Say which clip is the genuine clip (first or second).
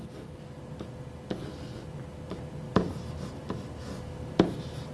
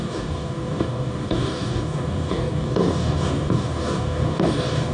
first